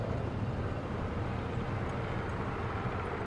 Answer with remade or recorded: recorded